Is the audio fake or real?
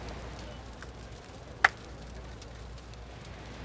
real